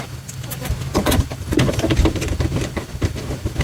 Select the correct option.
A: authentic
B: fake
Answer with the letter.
B